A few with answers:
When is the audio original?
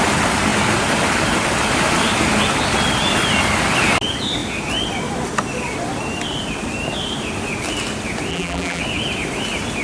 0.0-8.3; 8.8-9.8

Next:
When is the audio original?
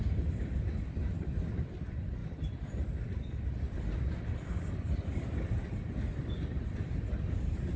0.0-7.8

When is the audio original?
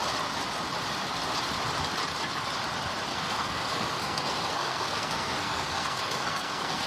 0.0-3.1